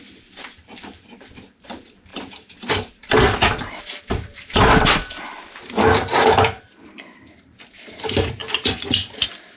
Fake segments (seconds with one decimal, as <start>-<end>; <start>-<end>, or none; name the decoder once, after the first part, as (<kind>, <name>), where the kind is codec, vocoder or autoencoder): 0.0-2.1 (vocoder, BigVGAN v2); 4.0-9.6